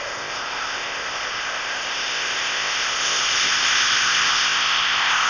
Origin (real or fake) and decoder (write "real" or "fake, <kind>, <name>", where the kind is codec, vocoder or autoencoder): fake, codec, ZipCodec